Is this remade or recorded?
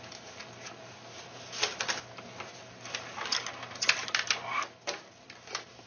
recorded